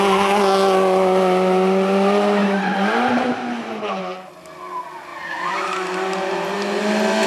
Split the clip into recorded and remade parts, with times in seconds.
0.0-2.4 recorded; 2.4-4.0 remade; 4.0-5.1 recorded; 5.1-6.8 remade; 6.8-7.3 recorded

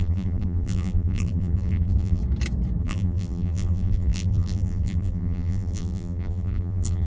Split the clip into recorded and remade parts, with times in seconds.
0.0-2.2 remade; 2.2-2.8 recorded; 2.8-7.1 remade

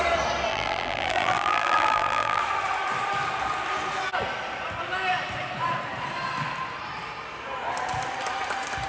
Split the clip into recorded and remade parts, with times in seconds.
0.0-0.5 recorded; 0.5-2.4 remade; 2.4-8.9 recorded

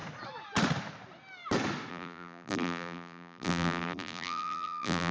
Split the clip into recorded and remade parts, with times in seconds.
0.0-1.9 recorded; 1.9-5.1 remade

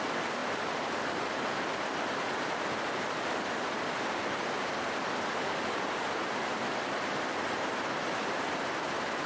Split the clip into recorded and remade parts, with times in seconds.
0.0-0.4 recorded; 0.4-1.8 remade; 1.8-9.3 recorded

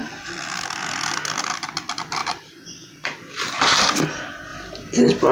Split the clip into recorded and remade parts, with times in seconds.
0.0-2.2 recorded; 2.2-4.0 remade; 4.0-5.3 recorded

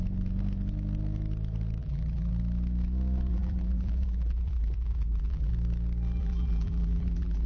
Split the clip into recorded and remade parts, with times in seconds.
0.0-1.8 recorded; 1.8-2.3 remade; 2.3-3.3 recorded; 3.3-5.5 remade; 5.5-6.2 recorded; 6.2-7.5 remade